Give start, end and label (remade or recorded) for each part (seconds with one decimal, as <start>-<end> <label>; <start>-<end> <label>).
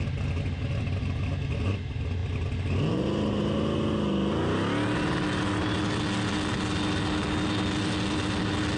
0.0-8.8 recorded